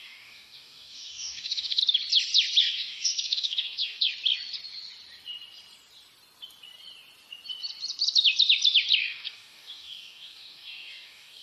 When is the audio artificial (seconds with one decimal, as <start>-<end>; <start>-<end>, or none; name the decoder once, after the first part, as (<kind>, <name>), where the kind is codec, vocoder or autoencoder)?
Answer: 0.0-1.8 (codec, DAC); 2.6-4.1; 9.0-11.4